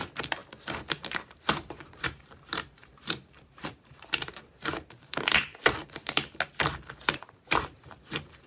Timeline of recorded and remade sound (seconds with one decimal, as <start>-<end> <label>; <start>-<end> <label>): 0.0-0.4 remade; 0.4-0.9 recorded; 0.9-6.2 remade; 6.2-7.1 recorded; 7.1-8.5 remade